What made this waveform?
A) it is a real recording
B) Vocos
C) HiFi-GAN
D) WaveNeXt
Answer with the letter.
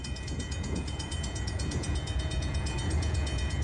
B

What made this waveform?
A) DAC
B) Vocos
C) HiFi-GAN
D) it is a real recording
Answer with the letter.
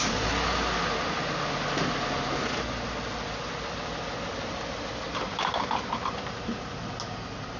D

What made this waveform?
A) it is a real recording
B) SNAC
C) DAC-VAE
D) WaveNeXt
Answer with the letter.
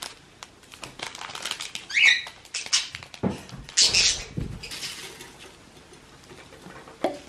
A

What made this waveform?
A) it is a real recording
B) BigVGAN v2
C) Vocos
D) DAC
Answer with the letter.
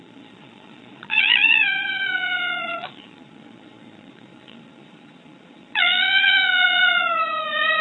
C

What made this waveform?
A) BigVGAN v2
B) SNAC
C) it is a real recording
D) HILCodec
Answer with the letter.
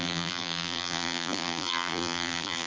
A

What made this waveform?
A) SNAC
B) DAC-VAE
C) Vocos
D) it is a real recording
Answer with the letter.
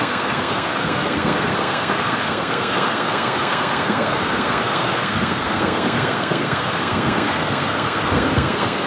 A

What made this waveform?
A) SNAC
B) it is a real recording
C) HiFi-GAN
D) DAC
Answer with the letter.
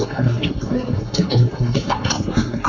A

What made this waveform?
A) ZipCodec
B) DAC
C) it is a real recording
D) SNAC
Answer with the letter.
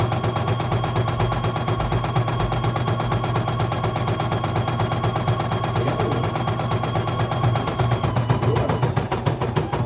C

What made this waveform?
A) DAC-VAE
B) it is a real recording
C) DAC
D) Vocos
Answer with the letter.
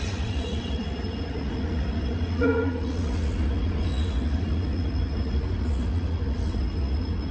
D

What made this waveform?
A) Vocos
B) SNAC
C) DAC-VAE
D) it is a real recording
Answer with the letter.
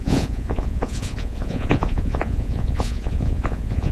A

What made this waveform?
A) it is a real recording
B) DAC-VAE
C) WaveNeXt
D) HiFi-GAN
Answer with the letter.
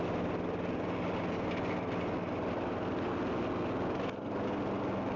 A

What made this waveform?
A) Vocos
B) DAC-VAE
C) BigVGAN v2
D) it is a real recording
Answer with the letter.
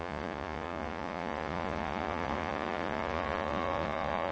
A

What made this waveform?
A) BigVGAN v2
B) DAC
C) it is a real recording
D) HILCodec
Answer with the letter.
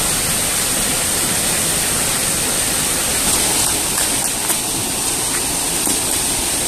C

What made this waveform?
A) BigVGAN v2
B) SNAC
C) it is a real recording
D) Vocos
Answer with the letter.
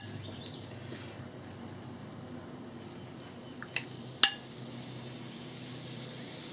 C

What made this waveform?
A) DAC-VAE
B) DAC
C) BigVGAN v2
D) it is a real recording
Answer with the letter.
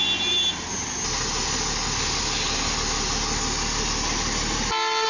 D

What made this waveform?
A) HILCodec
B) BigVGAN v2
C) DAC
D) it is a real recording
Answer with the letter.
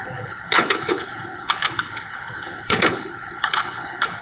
A